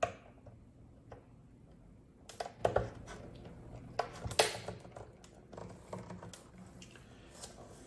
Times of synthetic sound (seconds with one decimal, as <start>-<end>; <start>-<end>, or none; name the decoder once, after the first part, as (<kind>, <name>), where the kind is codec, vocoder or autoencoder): none